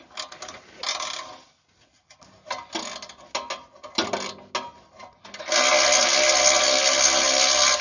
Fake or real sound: real